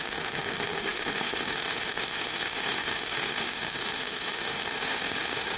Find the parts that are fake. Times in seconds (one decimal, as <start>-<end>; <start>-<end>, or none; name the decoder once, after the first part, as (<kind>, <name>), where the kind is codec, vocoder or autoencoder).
0.0-5.6 (autoencoder, DAC-VAE)